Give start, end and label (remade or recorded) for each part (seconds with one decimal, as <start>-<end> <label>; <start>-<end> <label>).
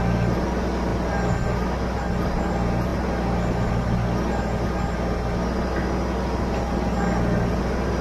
0.0-8.0 recorded